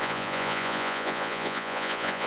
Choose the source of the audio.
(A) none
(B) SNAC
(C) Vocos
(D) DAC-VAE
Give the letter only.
C